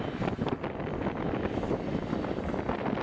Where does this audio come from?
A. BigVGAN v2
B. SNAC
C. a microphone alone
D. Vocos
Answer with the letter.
C